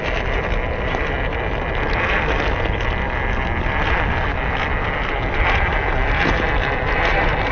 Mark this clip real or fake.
real